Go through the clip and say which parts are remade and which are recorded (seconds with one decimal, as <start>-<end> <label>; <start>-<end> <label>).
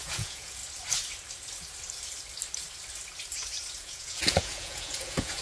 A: 0.0-0.6 remade; 0.6-3.8 recorded; 3.8-5.4 remade